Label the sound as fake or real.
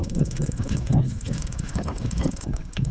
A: fake